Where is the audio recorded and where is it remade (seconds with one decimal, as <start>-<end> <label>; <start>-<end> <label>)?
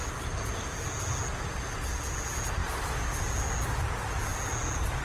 0.0-5.0 recorded